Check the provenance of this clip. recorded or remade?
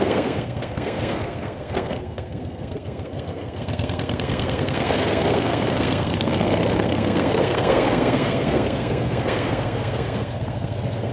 remade